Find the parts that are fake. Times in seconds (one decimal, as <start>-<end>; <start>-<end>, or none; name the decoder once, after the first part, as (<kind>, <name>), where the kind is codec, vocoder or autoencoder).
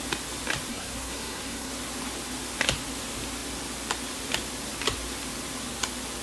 0.7-1.7 (codec, SNAC)